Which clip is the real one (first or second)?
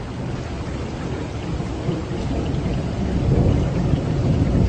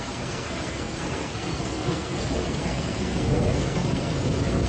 first